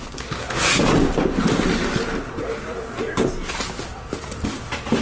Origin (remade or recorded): recorded